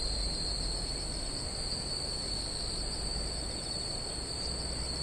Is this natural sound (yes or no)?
yes